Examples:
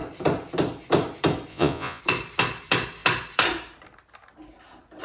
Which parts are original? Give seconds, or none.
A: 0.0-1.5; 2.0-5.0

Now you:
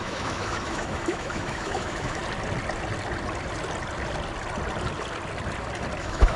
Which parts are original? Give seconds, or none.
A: 2.2-6.0

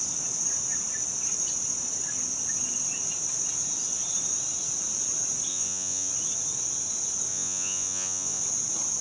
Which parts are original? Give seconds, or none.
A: 0.0-5.5; 6.1-7.3; 8.4-9.0

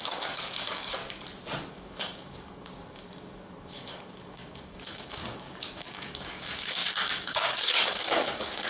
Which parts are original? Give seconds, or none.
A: 1.0-1.7